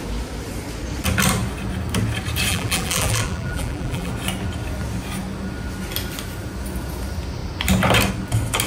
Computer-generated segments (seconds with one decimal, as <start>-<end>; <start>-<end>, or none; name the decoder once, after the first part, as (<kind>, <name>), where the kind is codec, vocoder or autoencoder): 2.5-4.1 (vocoder, BigVGAN v2)